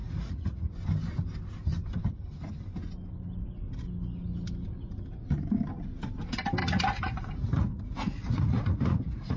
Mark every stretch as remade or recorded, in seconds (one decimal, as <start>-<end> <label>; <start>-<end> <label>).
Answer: 0.0-0.7 remade; 0.7-6.6 recorded; 6.6-9.4 remade